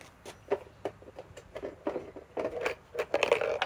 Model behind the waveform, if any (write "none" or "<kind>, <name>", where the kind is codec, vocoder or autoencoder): none